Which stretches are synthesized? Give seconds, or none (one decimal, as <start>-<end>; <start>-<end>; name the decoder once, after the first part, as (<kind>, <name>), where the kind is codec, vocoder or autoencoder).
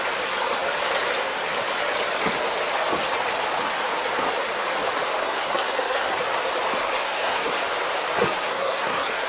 5.2-6.2 (codec, SNAC); 6.8-7.5; 8.2-9.3